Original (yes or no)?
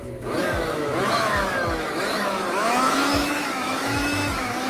no